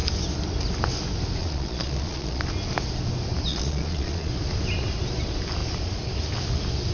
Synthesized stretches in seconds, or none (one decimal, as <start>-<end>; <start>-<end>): 1.4-2.4; 3.5-4.3